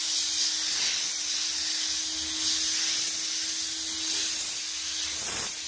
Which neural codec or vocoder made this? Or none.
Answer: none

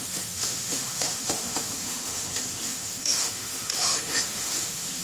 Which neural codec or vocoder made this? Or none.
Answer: autoencoder, DAC-VAE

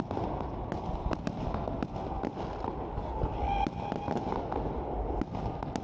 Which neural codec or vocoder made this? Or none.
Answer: none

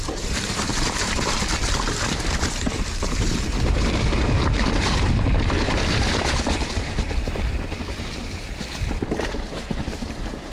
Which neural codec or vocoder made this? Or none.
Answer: vocoder, BigVGAN v2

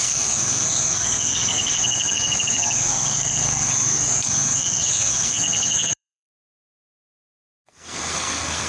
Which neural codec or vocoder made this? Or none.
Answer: codec, SNAC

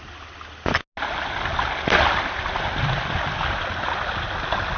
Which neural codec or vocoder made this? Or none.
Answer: none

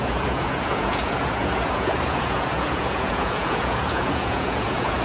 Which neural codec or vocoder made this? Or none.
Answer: vocoder, Vocos